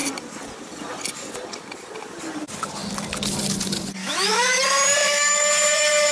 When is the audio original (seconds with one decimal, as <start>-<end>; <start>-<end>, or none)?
0.0-4.0; 4.6-5.0; 5.5-6.1